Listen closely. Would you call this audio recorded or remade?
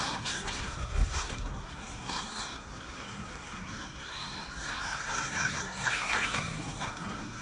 remade